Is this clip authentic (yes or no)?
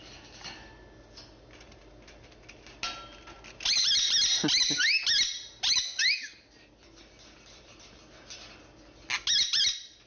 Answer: yes